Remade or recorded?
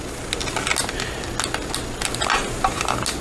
recorded